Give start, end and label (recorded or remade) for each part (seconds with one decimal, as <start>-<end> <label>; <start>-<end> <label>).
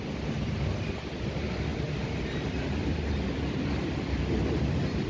0.0-5.1 recorded